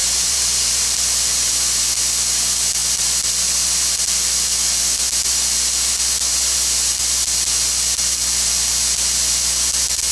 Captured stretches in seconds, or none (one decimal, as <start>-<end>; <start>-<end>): 1.5-10.1